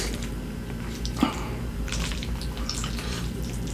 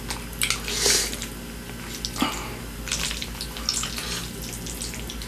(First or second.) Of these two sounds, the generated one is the first